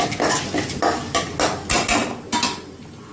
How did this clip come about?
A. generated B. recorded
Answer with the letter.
B